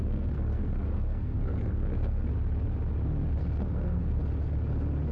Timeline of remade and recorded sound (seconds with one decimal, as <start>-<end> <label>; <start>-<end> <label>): 0.0-2.3 remade; 2.3-3.4 recorded; 3.4-4.2 remade; 4.2-5.1 recorded